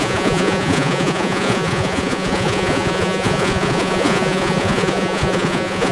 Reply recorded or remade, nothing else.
remade